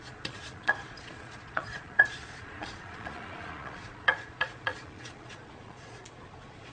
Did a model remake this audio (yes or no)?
yes